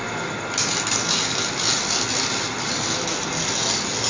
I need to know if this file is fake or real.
real